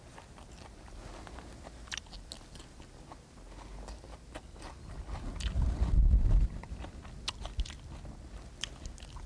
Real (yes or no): yes